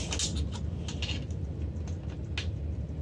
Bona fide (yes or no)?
yes